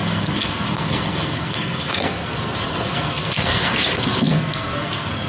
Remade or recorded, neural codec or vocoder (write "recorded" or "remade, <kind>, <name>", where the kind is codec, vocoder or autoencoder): remade, codec, SNAC